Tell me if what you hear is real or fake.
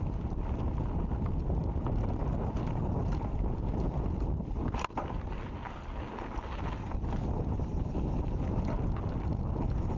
real